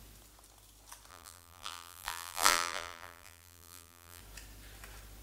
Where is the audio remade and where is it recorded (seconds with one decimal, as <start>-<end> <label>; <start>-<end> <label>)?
0.0-1.1 recorded; 1.1-4.2 remade; 4.2-5.2 recorded